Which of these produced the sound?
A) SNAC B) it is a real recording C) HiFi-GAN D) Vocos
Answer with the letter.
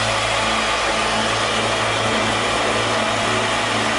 B